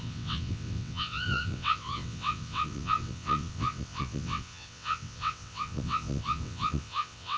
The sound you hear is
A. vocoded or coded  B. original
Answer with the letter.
A